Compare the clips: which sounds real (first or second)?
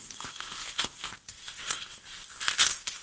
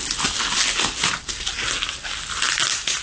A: second